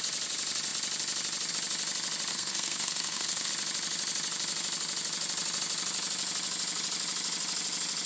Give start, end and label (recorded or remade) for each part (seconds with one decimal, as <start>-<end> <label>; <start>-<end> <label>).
0.0-2.3 recorded; 2.3-3.5 remade; 3.5-8.1 recorded